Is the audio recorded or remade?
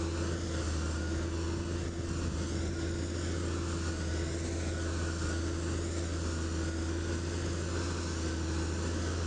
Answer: recorded